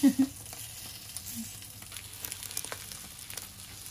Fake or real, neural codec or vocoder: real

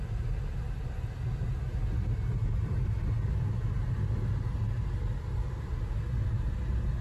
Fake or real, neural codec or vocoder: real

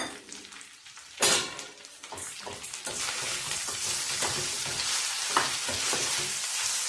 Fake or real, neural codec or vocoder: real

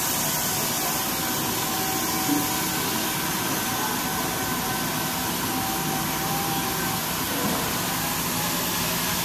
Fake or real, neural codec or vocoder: real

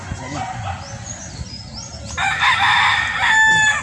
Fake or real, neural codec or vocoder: real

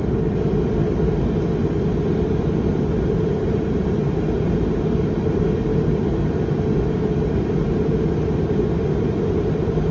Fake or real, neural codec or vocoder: real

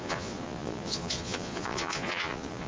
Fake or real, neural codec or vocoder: fake, vocoder, Vocos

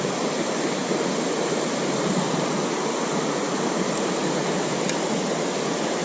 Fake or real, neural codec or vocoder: real